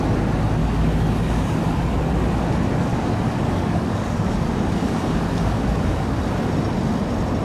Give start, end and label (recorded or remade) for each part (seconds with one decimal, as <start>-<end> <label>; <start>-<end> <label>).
0.0-0.6 recorded; 0.6-2.1 remade; 2.1-2.9 recorded; 2.9-6.2 remade; 6.2-7.4 recorded